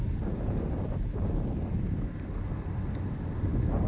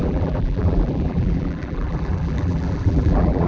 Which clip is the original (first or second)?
first